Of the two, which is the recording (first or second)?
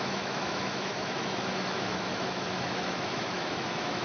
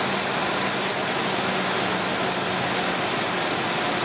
second